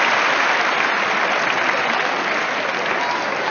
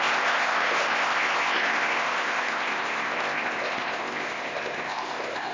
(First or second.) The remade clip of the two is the second